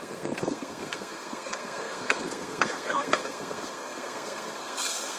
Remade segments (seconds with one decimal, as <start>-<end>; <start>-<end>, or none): 0.0-5.2